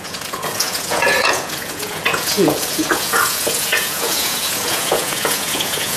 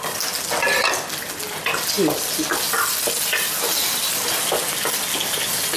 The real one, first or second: second